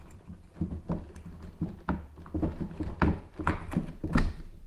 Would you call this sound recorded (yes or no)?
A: yes